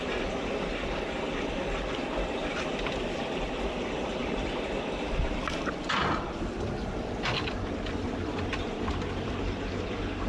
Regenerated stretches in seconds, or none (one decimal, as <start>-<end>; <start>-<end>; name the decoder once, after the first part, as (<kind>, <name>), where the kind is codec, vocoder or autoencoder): none